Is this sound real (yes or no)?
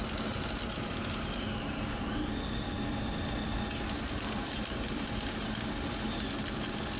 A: yes